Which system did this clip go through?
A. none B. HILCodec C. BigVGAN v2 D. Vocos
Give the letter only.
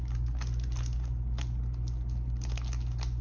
A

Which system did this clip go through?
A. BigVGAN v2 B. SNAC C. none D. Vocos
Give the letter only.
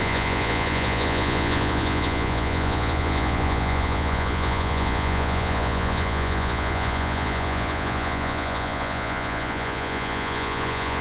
D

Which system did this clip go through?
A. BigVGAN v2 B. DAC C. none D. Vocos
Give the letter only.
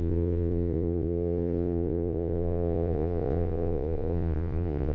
D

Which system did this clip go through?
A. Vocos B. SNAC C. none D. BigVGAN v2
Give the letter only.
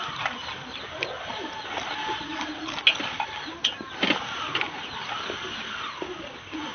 C